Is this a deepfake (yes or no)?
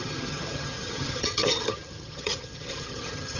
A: yes